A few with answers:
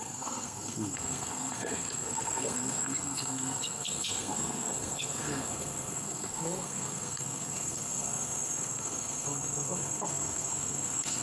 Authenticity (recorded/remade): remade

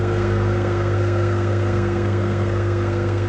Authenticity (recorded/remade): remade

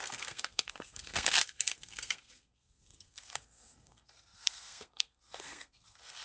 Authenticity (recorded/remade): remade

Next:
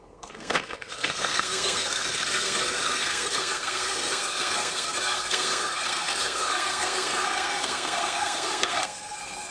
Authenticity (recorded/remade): remade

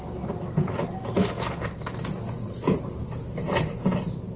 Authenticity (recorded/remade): recorded